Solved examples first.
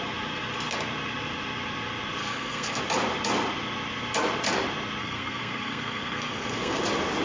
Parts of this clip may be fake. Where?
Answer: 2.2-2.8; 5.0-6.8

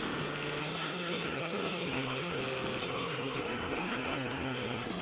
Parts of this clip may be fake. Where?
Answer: 0.6-2.4; 2.8-5.0

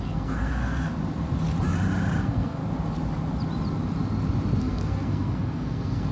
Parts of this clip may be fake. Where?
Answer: 0.0-0.9; 2.2-2.6; 4.6-6.1

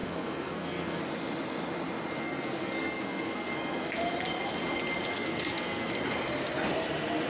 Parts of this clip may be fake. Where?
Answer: 0.0-1.0; 2.2-3.9; 5.1-5.9

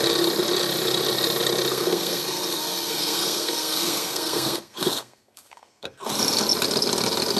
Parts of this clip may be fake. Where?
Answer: 1.7-6.1

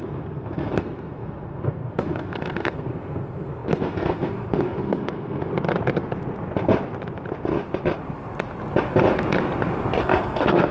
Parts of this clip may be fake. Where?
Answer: 0.0-5.5; 10.0-10.7

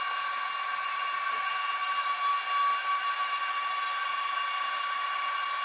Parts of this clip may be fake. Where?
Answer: none